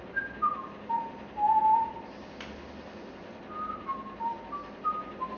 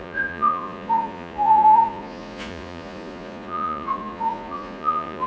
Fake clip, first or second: second